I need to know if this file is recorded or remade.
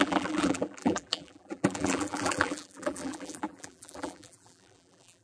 remade